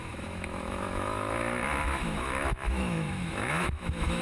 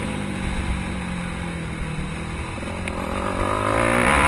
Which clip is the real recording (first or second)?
second